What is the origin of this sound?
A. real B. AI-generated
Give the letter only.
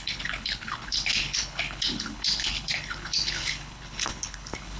B